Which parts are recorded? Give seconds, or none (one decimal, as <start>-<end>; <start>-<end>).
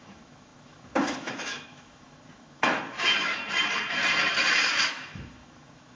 3.4-4.9